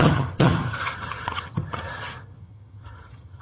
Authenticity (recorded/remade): remade